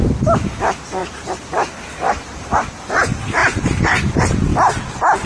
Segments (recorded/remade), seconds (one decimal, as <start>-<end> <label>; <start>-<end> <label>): 0.0-1.0 recorded; 1.0-2.8 remade; 2.8-3.4 recorded; 3.4-4.1 remade; 4.1-5.3 recorded